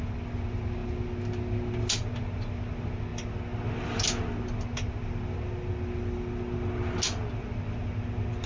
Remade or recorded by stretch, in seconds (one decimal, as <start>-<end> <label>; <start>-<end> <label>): 0.0-8.5 recorded